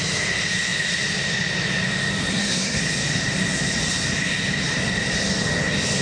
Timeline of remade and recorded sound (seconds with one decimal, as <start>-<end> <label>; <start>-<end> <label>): 0.0-2.3 recorded; 2.3-2.8 remade; 2.8-6.0 recorded